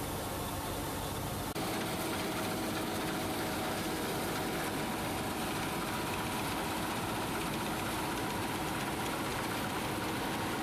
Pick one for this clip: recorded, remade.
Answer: recorded